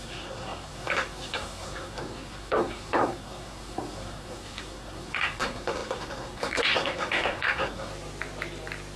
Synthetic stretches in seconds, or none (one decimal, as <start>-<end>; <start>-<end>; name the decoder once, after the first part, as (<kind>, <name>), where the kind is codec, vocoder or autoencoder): 0.0-7.9 (codec, SNAC)